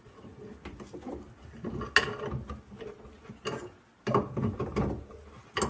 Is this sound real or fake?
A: real